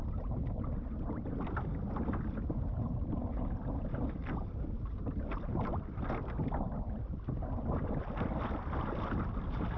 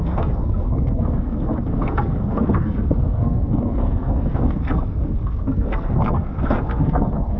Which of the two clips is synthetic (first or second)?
second